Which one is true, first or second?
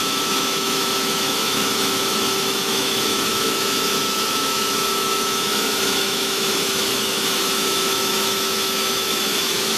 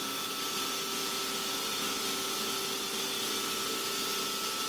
second